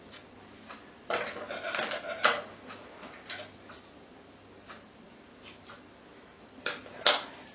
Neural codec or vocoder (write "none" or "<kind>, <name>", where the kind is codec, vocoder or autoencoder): none